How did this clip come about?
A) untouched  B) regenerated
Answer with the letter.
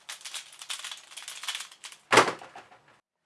A